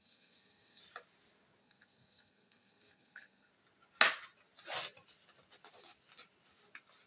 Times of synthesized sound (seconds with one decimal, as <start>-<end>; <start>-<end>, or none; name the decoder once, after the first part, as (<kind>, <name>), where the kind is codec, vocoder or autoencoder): 0.0-0.8 (codec, SNAC); 1.6-3.5